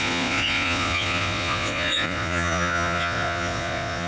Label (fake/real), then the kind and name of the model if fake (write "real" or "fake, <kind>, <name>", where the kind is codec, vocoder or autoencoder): fake, vocoder, Vocos